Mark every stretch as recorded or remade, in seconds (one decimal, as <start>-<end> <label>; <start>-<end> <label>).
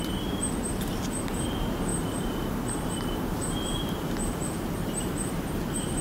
0.0-1.9 recorded; 1.9-5.5 remade; 5.5-6.0 recorded